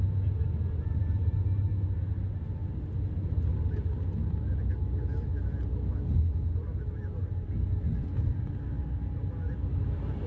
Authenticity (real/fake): real